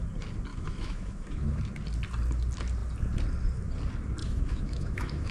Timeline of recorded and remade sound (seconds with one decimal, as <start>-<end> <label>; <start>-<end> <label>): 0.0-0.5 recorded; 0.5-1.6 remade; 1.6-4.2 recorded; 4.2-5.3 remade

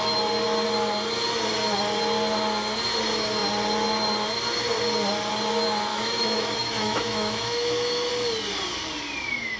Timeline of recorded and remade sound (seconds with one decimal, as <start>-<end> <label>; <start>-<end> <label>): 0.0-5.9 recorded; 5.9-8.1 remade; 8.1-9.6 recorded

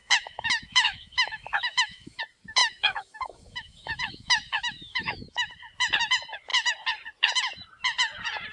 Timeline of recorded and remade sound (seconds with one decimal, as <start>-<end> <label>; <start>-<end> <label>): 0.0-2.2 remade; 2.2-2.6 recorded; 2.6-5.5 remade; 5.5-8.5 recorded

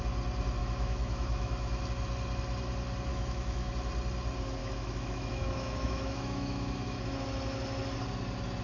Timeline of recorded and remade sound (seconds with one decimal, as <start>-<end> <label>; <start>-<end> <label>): 0.0-0.6 recorded; 0.6-1.8 remade; 1.8-3.1 recorded; 3.1-3.7 remade; 3.7-4.6 recorded; 4.6-7.0 remade; 7.0-8.6 recorded

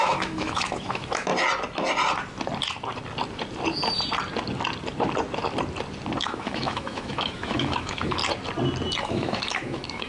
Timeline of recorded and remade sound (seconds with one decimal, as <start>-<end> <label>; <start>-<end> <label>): 0.0-1.3 remade; 1.3-6.2 recorded; 6.2-8.2 remade; 8.2-9.0 recorded; 9.0-10.1 remade